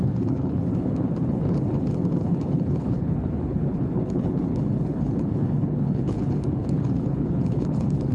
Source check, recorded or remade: remade